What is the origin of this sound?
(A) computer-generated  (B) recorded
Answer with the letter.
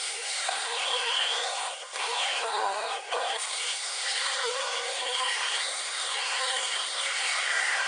A